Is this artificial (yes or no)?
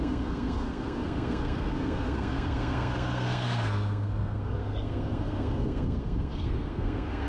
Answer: yes